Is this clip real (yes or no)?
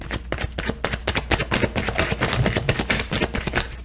yes